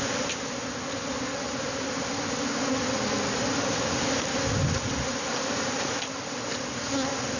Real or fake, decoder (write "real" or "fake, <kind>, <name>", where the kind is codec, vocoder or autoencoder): real